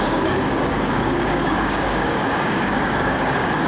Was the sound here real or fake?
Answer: fake